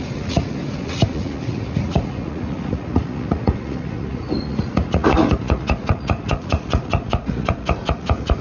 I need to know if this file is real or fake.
fake